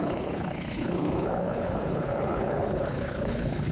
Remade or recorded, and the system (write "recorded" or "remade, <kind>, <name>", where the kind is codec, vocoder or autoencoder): remade, codec, HILCodec